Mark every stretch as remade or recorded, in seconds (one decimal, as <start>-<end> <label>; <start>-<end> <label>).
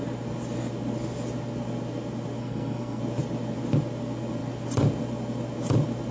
0.0-2.4 recorded; 2.4-3.0 remade; 3.0-6.1 recorded